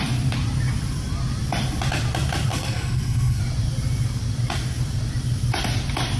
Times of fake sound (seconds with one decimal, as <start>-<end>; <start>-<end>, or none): 2.5-3.4